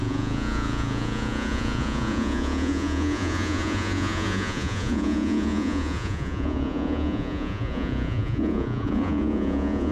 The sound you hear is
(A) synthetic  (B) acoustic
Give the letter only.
A